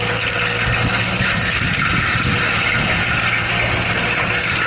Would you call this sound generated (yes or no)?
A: no